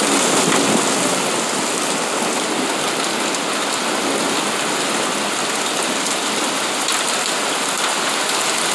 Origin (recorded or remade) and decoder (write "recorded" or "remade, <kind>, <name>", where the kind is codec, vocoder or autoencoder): recorded